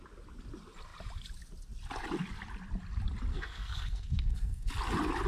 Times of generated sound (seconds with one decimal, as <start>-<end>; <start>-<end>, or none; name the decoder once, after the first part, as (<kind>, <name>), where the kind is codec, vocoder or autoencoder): 3.3-4.7 (codec, SNAC)